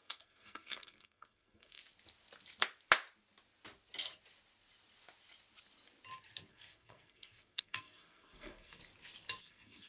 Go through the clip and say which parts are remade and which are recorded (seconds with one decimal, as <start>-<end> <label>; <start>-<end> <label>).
0.0-1.8 remade; 1.8-6.5 recorded; 6.5-8.8 remade; 8.8-9.4 recorded; 9.4-9.9 remade